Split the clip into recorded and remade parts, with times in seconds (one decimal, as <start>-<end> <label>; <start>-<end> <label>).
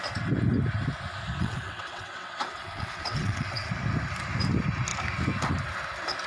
0.0-1.4 recorded; 1.4-3.7 remade; 3.7-6.3 recorded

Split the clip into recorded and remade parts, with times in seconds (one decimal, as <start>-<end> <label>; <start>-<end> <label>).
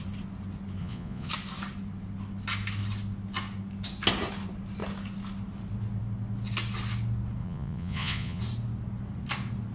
0.0-0.8 recorded; 0.8-1.3 remade; 1.3-7.4 recorded; 7.4-8.4 remade; 8.4-9.7 recorded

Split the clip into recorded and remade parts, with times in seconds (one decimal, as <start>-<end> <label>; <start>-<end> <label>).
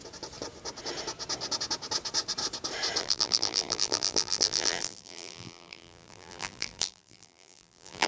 0.0-3.0 recorded; 3.0-8.1 remade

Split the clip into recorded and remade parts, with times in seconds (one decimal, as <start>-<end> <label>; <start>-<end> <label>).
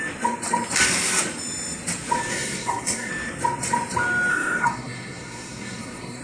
0.0-2.3 recorded; 2.3-3.1 remade; 3.1-4.3 recorded; 4.3-6.2 remade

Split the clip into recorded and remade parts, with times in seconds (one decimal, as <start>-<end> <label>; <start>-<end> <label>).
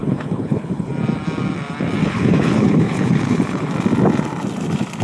0.0-0.9 remade; 0.9-2.0 recorded; 2.0-3.7 remade; 3.7-5.0 recorded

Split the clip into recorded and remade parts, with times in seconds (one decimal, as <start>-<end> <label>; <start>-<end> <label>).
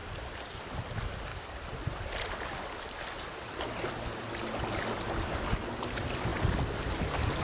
0.0-7.4 recorded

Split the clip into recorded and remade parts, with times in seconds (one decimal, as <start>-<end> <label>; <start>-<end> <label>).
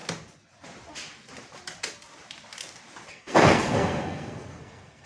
0.0-3.1 recorded; 3.1-5.1 remade